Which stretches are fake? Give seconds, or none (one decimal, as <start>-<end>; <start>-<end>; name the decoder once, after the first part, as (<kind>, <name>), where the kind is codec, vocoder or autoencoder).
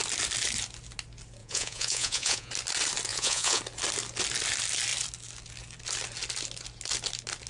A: 1.4-2.5 (vocoder, Vocos); 3.1-3.6